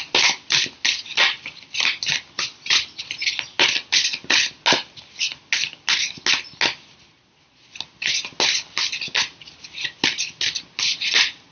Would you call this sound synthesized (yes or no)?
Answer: no